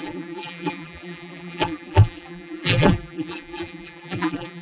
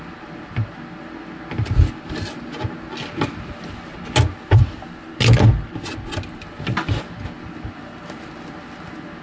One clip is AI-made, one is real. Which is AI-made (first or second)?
first